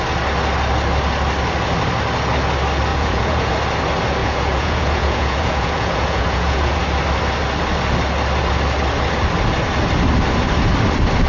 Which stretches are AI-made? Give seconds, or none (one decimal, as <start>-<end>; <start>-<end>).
2.9-3.5; 4.2-6.8